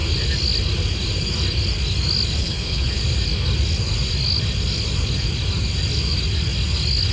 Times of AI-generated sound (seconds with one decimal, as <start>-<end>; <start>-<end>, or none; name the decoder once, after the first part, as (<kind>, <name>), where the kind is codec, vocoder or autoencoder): 2.4-3.0 (codec, HILCodec)